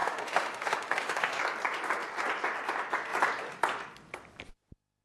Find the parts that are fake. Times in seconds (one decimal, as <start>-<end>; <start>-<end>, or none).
0.0-1.4